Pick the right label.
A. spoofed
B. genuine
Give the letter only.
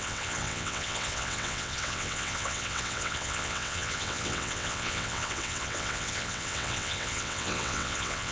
A